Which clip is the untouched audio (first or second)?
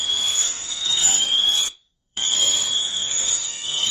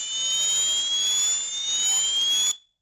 second